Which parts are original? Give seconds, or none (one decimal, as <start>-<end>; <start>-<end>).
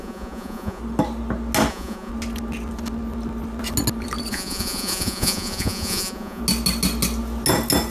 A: 0.8-1.7; 2.1-4.3; 6.4-7.9